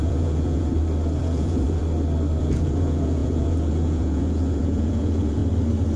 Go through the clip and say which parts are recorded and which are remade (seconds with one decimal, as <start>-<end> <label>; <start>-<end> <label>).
0.0-0.7 remade; 0.7-1.2 recorded; 1.2-1.8 remade; 1.8-2.4 recorded; 2.4-5.4 remade; 5.4-6.0 recorded